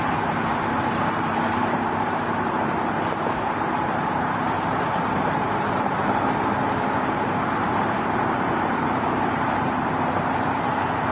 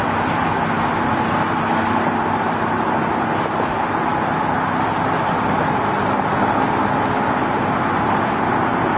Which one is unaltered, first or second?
second